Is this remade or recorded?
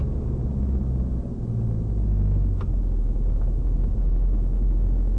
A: recorded